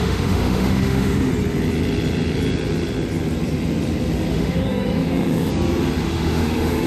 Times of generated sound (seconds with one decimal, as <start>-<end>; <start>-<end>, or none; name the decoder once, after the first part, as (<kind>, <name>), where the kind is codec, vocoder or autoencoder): 0.0-1.3 (autoencoder, DAC-VAE); 4.3-5.5; 6.0-6.9